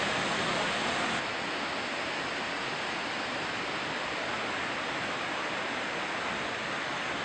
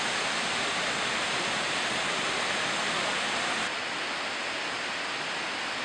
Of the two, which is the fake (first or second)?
second